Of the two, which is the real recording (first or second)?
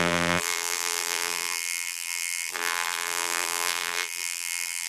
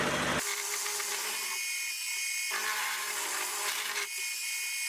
second